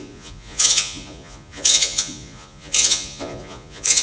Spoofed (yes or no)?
yes